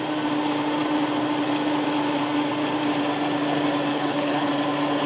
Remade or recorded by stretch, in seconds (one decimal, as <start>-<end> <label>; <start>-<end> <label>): 0.0-3.9 recorded; 3.9-4.5 remade; 4.5-5.1 recorded